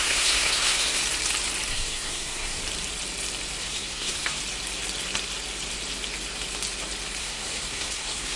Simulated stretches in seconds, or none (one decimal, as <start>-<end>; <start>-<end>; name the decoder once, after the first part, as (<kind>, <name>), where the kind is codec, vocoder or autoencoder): 0.0-1.0 (codec, SNAC); 1.7-2.6; 3.6-4.4; 7.2-8.4